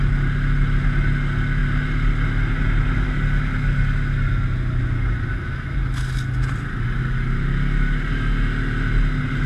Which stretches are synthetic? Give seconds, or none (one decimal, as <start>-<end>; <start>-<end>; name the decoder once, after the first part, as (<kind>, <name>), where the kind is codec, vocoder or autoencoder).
none